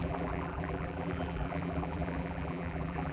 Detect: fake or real fake